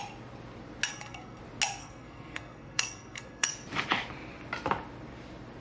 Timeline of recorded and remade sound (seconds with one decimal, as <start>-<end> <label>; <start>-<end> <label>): 0.0-0.9 recorded; 0.9-1.4 remade; 1.4-1.8 recorded; 1.8-3.5 remade; 3.5-5.6 recorded